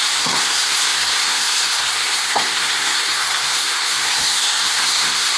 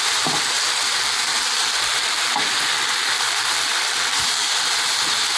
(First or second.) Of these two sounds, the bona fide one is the second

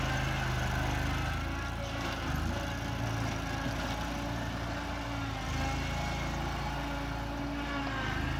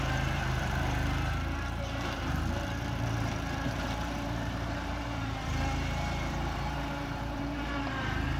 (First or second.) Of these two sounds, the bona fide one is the first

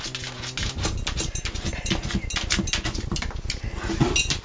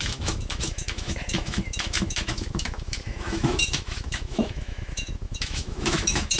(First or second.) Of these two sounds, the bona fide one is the first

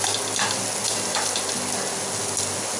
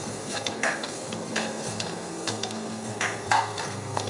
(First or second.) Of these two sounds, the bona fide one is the first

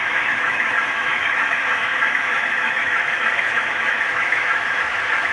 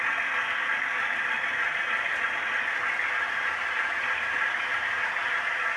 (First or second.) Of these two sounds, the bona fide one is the second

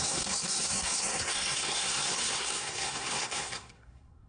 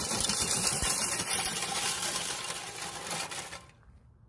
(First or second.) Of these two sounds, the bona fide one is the second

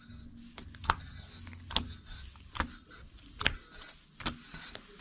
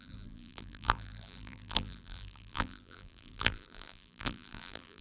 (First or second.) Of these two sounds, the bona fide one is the first